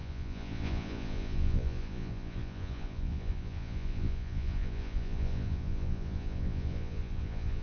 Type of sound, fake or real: fake